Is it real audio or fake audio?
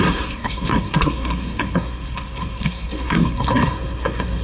fake